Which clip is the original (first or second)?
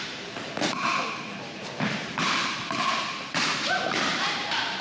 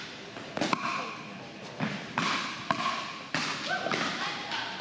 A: second